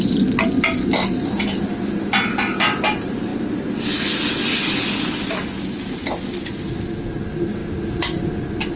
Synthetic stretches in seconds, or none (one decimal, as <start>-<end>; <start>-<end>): none